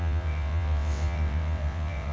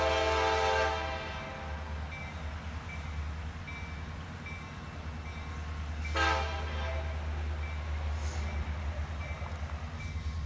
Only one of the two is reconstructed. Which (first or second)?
first